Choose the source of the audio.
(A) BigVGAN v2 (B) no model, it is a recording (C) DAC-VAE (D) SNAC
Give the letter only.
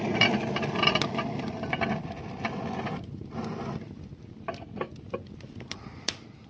A